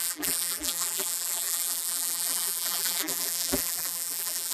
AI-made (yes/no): yes